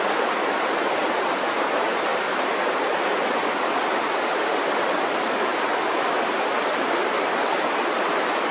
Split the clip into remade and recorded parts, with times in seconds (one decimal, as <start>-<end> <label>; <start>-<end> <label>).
0.0-8.5 remade